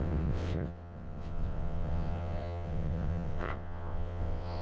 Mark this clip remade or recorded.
remade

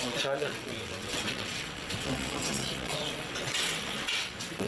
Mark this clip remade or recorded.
remade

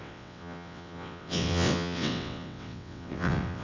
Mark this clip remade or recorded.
remade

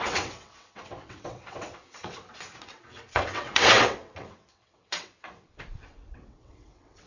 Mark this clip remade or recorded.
remade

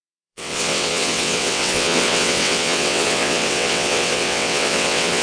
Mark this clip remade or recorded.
remade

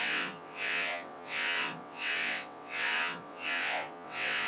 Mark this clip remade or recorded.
remade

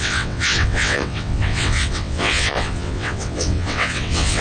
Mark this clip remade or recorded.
remade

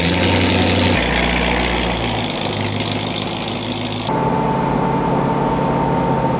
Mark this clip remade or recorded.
recorded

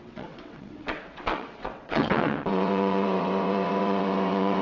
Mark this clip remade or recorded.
remade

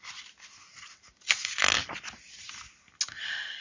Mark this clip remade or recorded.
recorded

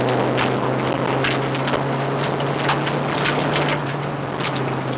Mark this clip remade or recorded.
recorded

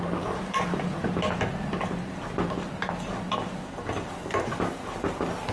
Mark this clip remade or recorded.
recorded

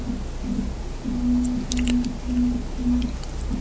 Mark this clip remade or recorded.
recorded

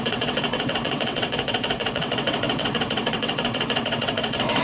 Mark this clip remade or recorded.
remade